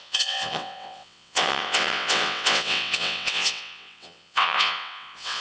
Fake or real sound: fake